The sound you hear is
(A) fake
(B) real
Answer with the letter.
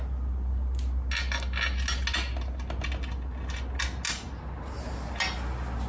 B